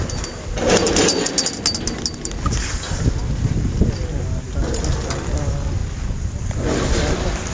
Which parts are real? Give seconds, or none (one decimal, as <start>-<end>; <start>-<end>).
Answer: 0.0-7.5